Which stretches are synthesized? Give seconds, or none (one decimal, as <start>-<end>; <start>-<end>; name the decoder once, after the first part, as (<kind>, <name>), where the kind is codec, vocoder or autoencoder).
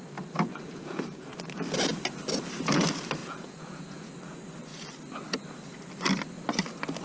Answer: 0.5-1.3 (vocoder, Vocos); 3.2-4.1